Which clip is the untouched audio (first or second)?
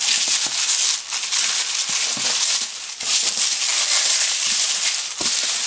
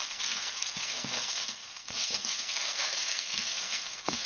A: first